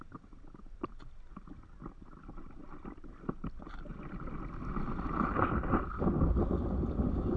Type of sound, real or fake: real